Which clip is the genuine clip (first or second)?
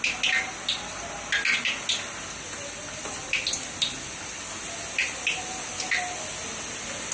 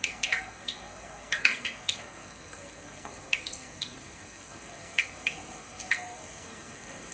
first